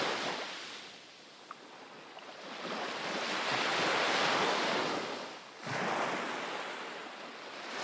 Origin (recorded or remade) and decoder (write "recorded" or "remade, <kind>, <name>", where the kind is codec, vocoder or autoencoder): recorded